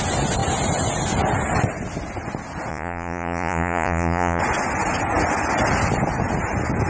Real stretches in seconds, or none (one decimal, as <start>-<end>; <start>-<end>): 0.0-2.7; 4.4-6.9